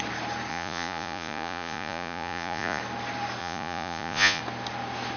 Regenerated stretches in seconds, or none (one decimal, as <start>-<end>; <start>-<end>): 0.5-2.8; 3.4-4.4